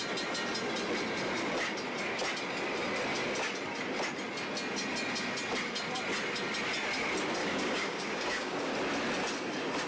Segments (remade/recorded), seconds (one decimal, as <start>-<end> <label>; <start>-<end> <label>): 0.0-7.4 recorded; 7.4-8.7 remade; 8.7-9.9 recorded